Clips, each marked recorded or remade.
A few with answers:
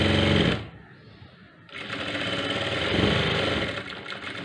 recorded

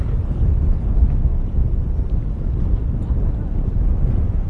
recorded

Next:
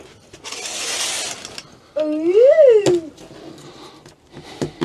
recorded